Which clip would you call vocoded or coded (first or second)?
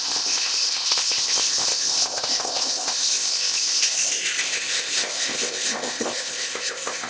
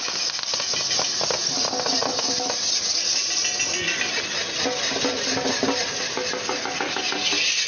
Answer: first